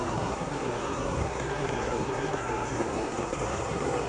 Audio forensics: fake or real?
fake